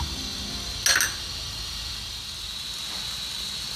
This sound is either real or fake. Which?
real